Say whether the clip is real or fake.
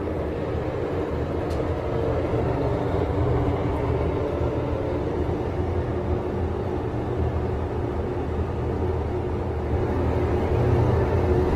real